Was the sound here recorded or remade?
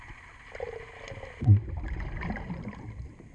recorded